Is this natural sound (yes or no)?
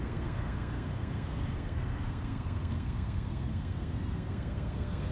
no